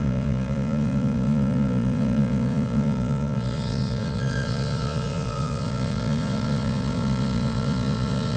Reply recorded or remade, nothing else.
remade